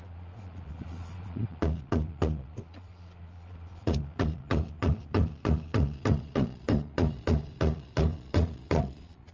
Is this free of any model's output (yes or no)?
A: no